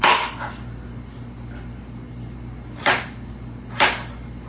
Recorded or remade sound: recorded